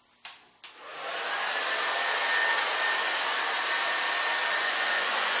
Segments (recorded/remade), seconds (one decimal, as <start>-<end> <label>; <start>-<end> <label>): 0.0-4.6 recorded; 4.6-5.4 remade